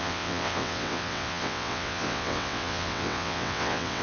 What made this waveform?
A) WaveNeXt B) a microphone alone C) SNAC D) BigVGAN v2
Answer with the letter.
A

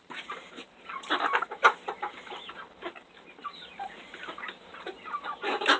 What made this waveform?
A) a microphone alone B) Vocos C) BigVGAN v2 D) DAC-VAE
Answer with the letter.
C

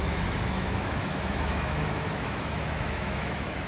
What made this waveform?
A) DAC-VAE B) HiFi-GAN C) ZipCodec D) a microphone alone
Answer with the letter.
A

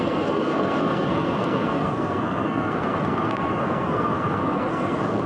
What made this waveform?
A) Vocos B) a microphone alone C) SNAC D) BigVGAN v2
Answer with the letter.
C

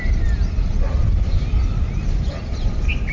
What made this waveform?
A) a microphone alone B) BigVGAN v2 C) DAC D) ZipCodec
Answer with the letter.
A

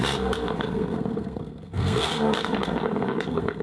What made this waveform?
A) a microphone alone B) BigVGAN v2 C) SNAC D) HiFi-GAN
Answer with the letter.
C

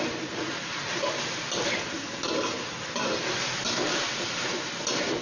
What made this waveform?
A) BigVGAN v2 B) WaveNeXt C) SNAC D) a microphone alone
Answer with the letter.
D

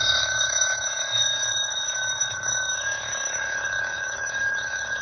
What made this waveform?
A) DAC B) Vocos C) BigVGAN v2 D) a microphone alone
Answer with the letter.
A